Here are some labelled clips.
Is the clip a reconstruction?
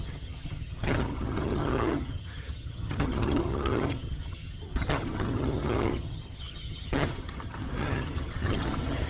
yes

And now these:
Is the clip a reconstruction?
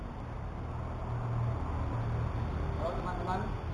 no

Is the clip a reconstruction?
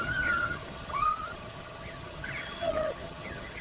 yes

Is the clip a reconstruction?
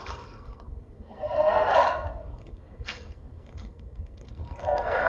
yes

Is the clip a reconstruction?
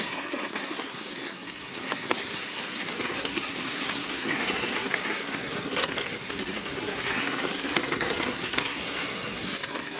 yes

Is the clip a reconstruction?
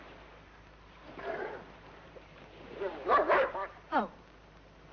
yes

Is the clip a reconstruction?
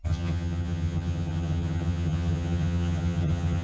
yes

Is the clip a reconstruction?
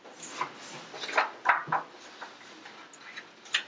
no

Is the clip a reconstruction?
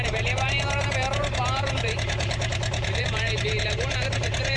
yes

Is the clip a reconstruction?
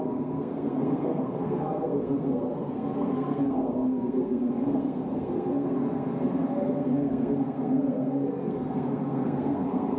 yes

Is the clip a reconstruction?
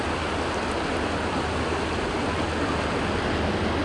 no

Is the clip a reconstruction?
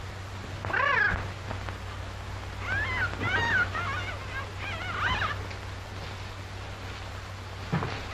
no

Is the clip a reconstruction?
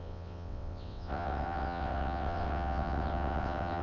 yes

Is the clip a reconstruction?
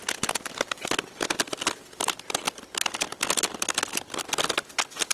no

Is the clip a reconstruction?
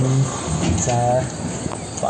no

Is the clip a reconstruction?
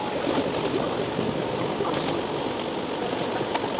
no